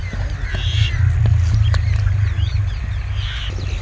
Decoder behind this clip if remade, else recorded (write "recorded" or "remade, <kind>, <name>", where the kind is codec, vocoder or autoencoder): recorded